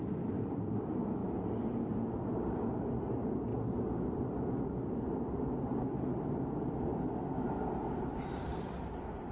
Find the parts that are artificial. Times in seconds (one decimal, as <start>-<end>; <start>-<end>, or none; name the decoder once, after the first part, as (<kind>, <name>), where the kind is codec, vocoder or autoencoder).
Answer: none